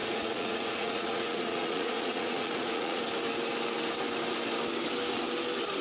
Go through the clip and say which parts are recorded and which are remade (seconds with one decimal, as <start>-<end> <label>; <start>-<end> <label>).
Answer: 0.0-3.0 remade; 3.0-5.8 recorded